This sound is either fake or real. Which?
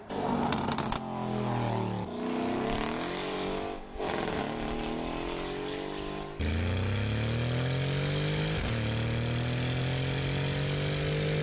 real